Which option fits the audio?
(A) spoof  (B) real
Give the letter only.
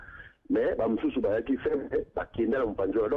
B